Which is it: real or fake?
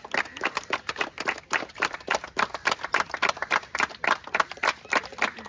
fake